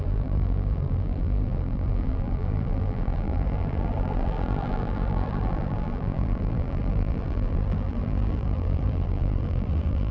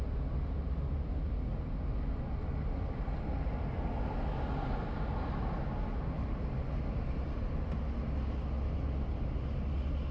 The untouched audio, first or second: second